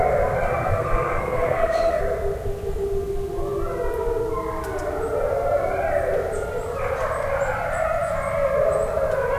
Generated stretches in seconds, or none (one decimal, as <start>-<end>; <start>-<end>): 0.6-2.0